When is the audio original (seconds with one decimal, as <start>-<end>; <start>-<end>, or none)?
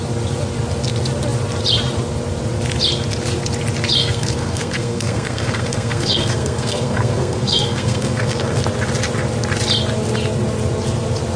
0.0-4.0; 8.6-11.4